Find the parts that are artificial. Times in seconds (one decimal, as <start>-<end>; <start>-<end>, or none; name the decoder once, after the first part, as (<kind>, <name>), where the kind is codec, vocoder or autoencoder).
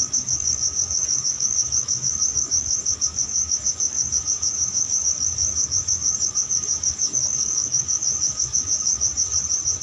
0.0-9.1 (codec, DAC)